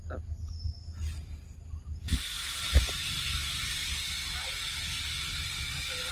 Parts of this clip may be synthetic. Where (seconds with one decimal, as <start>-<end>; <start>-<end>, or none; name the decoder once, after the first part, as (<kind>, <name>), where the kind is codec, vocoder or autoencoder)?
none